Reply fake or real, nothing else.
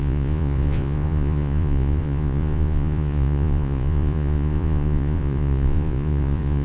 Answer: fake